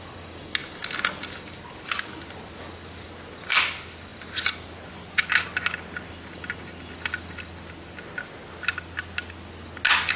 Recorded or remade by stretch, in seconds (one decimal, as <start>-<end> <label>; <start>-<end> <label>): 0.0-10.2 recorded